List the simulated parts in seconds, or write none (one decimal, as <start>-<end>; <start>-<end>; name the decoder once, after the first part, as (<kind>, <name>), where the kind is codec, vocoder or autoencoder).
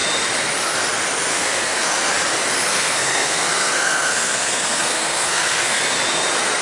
1.3-2.1 (codec, SNAC); 2.7-5.8